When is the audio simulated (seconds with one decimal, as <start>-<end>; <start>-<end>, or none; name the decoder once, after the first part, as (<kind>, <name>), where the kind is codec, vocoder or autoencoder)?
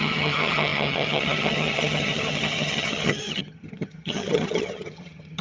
0.0-5.4 (vocoder, HiFi-GAN)